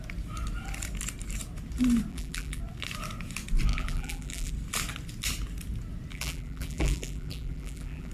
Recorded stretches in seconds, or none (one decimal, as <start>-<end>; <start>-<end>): 0.0-2.1; 2.6-3.7; 4.5-6.1